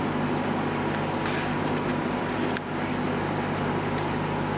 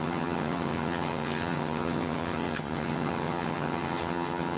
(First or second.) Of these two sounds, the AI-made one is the second